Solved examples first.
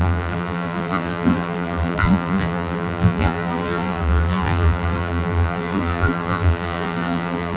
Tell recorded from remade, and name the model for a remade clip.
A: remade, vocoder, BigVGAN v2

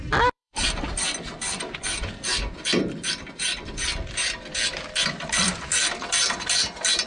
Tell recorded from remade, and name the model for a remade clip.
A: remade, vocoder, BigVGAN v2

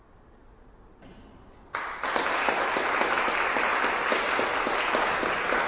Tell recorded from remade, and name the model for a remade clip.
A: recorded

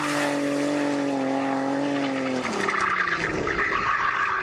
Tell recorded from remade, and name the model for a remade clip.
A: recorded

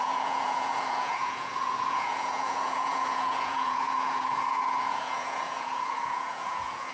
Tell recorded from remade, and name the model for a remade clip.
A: remade, vocoder, Vocos